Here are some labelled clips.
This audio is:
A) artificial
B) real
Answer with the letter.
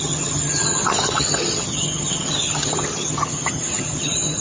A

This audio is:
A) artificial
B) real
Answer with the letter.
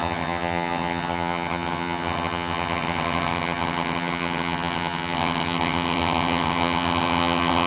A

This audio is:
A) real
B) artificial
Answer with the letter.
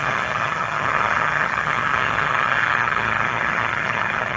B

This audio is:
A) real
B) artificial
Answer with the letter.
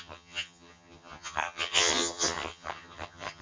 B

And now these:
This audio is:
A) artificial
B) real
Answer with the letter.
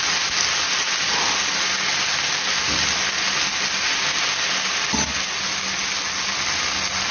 B